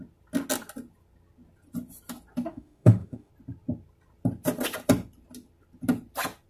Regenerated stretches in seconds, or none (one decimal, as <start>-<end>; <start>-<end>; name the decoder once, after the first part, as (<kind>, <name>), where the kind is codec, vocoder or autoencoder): 2.5-3.3 (autoencoder, DAC-VAE)

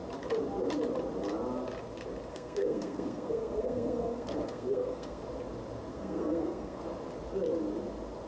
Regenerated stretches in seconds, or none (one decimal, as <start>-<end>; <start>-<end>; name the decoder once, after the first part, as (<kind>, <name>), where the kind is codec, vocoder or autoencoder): 2.3-5.2 (codec, SNAC); 5.9-6.8

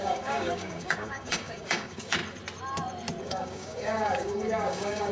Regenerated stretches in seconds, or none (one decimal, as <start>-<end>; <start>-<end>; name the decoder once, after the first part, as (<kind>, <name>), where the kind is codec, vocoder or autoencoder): 0.0-2.2 (codec, DAC); 3.2-5.1

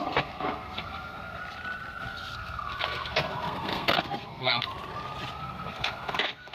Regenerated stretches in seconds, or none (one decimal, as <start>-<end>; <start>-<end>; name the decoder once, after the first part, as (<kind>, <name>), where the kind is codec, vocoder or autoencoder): 0.0-1.4 (codec, SNAC); 2.0-4.7; 5.3-6.5

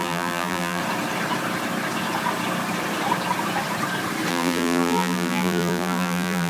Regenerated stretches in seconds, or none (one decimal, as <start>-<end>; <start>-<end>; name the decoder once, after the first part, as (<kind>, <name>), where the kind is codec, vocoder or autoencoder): 0.0-0.8 (vocoder, BigVGAN v2); 4.3-6.5

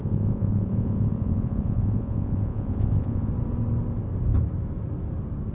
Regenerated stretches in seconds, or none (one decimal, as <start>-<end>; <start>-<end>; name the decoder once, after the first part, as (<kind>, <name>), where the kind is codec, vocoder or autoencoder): 0.0-3.3 (vocoder, Vocos)

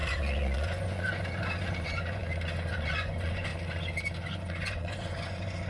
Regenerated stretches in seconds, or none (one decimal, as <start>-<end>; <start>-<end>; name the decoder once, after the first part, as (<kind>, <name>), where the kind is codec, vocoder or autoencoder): 0.0-2.2 (vocoder, Vocos); 2.7-3.5; 4.3-5.7

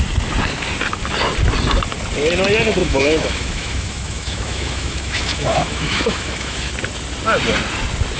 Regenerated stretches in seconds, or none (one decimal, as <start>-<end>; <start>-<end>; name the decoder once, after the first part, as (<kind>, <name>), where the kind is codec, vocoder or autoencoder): 2.8-6.7 (autoencoder, DAC-VAE)